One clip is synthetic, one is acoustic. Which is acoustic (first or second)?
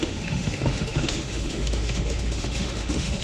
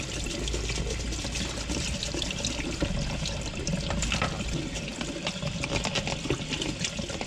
second